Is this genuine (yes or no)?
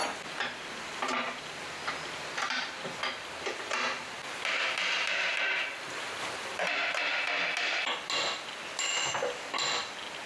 yes